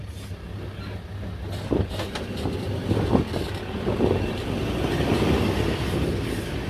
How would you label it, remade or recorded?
recorded